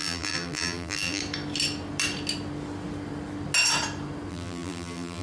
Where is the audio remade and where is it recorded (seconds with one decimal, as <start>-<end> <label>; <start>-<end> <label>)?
0.0-1.2 remade; 1.2-4.3 recorded; 4.3-5.2 remade

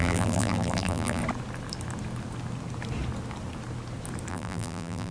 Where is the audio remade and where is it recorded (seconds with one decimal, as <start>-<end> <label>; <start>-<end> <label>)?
0.0-1.2 remade; 1.2-4.3 recorded; 4.3-5.1 remade

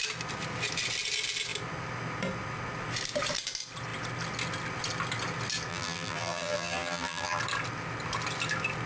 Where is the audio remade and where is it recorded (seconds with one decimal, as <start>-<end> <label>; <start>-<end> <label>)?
0.0-5.7 recorded; 5.7-7.4 remade; 7.4-8.9 recorded

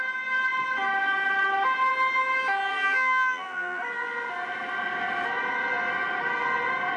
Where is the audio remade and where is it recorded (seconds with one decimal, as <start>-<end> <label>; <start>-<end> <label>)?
0.0-2.7 recorded; 2.7-3.8 remade; 3.8-7.0 recorded

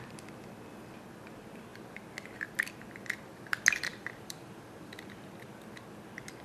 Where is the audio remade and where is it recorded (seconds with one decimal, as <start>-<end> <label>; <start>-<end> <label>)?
0.0-3.9 recorded; 3.9-5.3 remade; 5.3-6.4 recorded

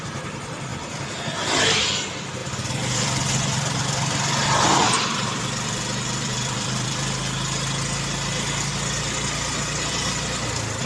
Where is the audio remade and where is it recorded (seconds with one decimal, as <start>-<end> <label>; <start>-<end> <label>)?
0.0-2.4 recorded; 2.4-7.1 remade; 7.1-10.9 recorded

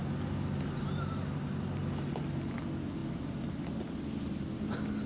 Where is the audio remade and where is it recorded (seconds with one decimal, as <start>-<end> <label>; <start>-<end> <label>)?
0.0-5.1 recorded